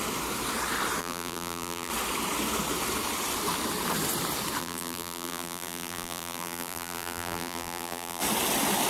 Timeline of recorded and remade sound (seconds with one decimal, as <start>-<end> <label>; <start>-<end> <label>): 0.0-1.0 recorded; 1.0-1.9 remade; 1.9-4.6 recorded; 4.6-8.2 remade; 8.2-8.9 recorded